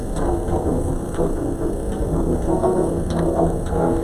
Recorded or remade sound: remade